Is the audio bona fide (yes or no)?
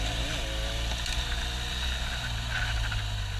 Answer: yes